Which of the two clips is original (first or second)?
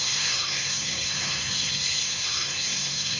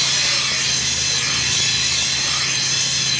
second